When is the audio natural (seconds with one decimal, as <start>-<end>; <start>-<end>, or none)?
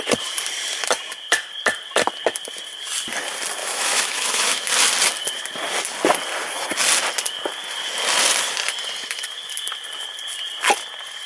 0.0-3.6; 4.7-11.3